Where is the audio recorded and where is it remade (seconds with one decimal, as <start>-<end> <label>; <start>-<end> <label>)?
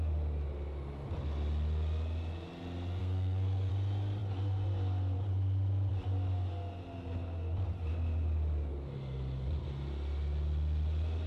0.0-3.0 recorded; 3.0-3.7 remade; 3.7-11.3 recorded